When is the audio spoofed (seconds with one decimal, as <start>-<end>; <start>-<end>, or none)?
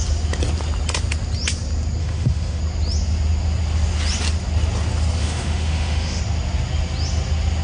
2.0-2.6; 5.2-6.2